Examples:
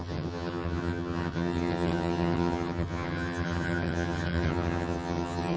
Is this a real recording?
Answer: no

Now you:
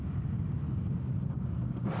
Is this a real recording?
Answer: yes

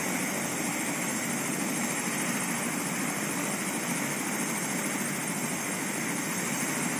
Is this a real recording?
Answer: yes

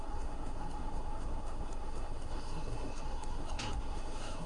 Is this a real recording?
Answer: no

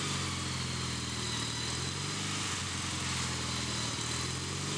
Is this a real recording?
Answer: yes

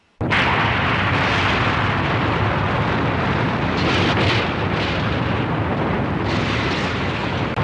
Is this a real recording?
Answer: yes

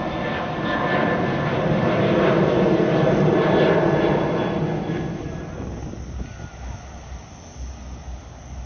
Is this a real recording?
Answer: yes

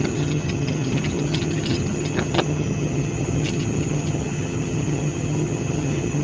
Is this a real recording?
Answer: no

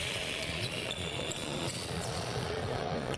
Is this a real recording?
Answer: no